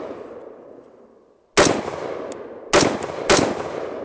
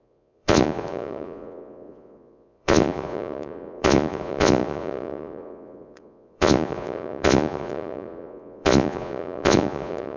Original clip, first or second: first